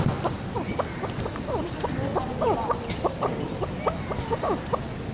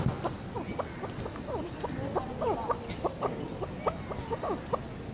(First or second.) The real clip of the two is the second